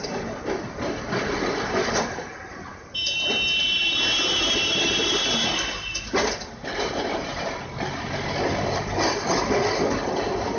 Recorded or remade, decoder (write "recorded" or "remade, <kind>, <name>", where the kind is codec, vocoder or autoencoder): recorded